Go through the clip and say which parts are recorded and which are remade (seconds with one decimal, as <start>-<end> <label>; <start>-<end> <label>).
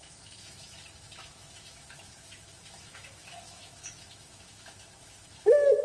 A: 0.0-5.8 remade